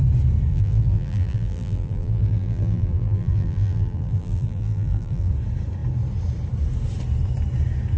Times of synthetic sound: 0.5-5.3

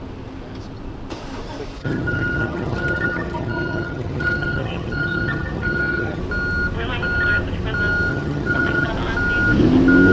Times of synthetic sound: 1.8-6.2; 8.1-8.9

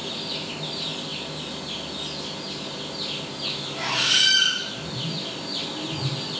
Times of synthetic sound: none

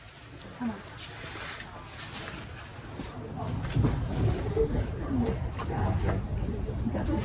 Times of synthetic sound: none